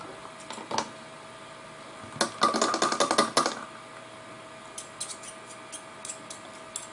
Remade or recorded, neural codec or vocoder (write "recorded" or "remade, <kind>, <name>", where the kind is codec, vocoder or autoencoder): recorded